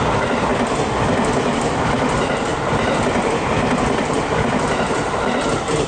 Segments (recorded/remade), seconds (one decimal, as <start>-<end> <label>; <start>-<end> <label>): 0.0-0.5 remade; 0.5-1.8 recorded; 1.8-5.9 remade